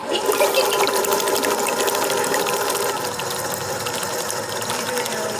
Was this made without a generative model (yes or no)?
yes